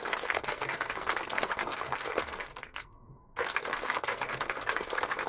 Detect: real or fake fake